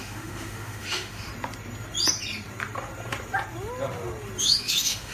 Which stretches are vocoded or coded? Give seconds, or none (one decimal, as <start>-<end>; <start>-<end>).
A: 0.0-1.3; 4.4-5.1